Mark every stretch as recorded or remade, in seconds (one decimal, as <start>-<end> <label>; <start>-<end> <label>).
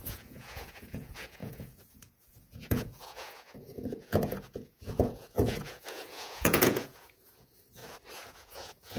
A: 0.0-7.8 remade; 7.8-8.3 recorded; 8.3-9.0 remade